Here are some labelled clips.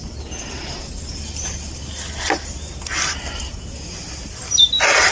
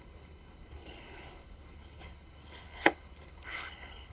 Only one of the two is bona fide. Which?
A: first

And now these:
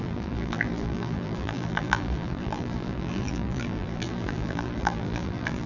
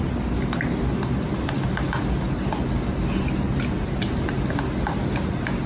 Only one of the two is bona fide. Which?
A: second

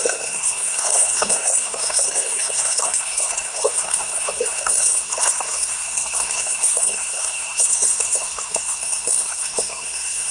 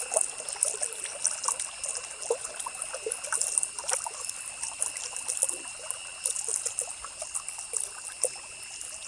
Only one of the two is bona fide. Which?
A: second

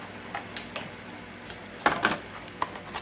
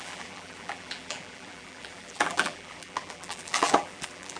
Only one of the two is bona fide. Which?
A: first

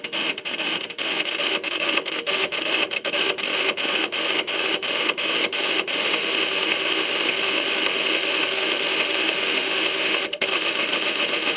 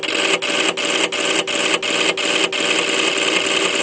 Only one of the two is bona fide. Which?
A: second